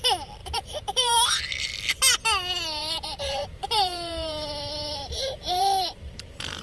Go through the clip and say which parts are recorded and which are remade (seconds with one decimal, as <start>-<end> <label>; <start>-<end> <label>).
0.0-0.4 recorded; 0.4-1.4 remade; 1.4-2.8 recorded; 2.8-6.6 remade